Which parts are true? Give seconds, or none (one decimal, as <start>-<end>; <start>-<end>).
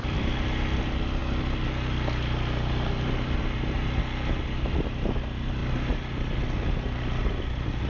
0.0-7.9